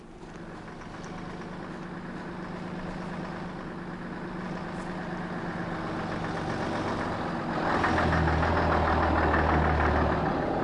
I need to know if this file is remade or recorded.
recorded